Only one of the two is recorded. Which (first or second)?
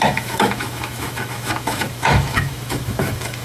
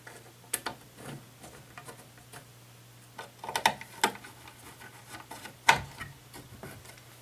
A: second